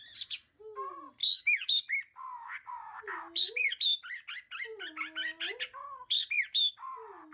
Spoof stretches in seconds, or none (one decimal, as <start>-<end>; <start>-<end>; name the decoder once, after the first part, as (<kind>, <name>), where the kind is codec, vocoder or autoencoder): 1.2-1.7 (autoencoder, DAC-VAE)